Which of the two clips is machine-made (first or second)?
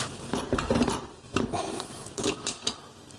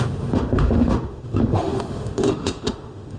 second